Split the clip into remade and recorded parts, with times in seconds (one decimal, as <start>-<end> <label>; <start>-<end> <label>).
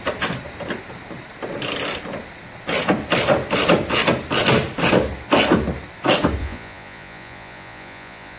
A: 0.0-6.4 recorded; 6.4-8.4 remade